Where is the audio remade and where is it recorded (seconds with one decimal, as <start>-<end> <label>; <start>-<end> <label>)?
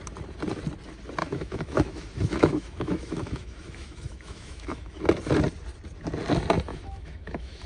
0.0-1.2 recorded; 1.2-5.0 remade; 5.0-6.7 recorded; 6.7-7.7 remade